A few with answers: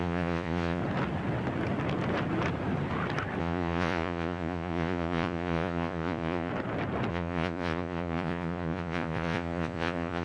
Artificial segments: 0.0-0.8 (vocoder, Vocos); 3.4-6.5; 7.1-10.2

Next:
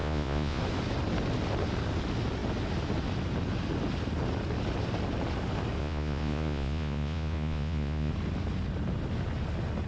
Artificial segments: 0.0-0.6 (vocoder, Vocos); 5.8-8.1

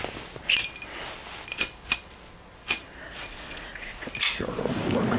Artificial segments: 3.1-5.2 (vocoder, Vocos)

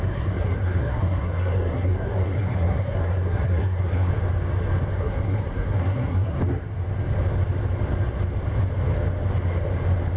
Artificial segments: 0.0-4.1 (codec, SNAC); 4.9-6.4

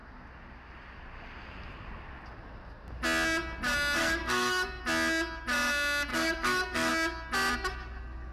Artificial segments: 4.0-4.8 (codec, SNAC); 6.1-6.9

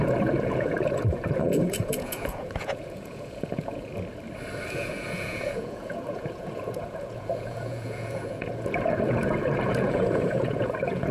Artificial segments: 0.0-3.9 (vocoder, Vocos); 4.7-11.1